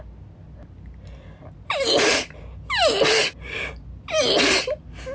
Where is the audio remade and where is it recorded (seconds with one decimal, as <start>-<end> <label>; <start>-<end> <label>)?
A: 0.0-5.1 recorded